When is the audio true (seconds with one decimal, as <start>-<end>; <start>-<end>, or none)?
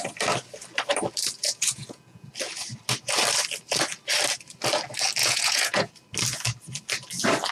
0.0-1.4; 2.3-5.2; 5.9-7.5